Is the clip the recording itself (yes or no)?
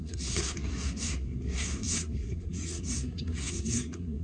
no